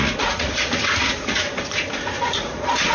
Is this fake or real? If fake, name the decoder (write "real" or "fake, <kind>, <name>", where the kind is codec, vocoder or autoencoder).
fake, vocoder, Vocos